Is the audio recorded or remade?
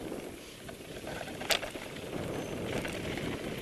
recorded